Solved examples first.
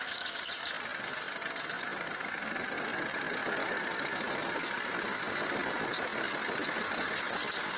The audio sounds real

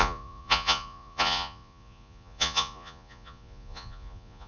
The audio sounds fake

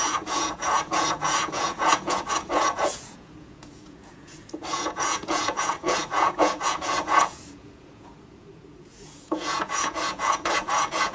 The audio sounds fake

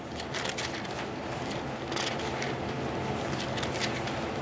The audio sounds real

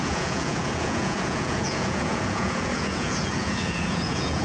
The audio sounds fake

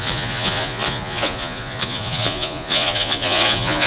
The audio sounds fake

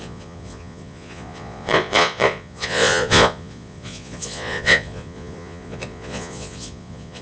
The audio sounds fake